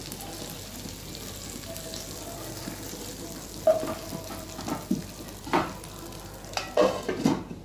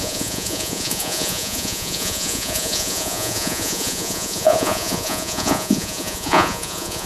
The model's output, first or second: second